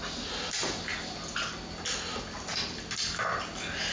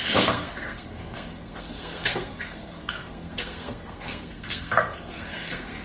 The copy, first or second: second